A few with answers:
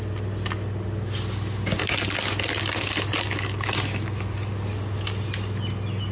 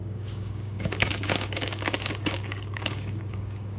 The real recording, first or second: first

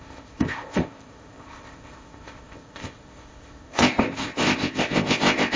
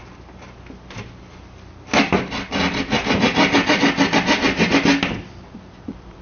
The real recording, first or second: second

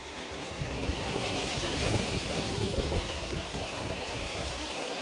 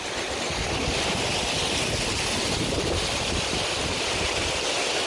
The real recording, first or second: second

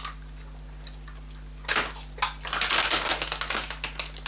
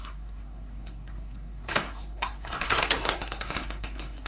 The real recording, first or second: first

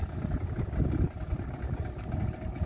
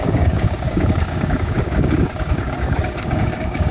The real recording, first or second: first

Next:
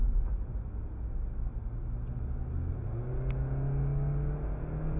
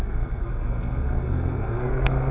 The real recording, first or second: first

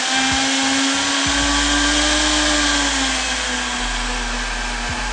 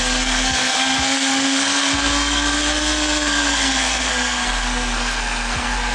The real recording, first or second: first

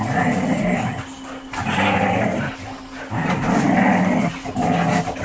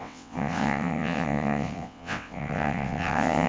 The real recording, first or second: first